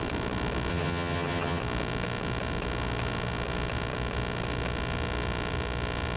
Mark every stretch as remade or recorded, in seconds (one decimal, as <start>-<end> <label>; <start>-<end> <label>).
0.0-0.7 recorded; 0.7-1.6 remade; 1.6-6.2 recorded